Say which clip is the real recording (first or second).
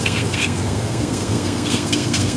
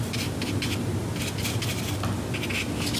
second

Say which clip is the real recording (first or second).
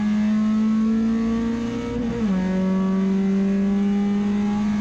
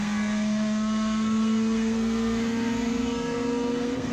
first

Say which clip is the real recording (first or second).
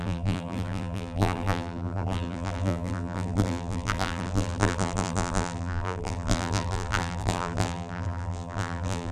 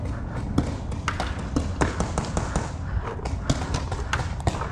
second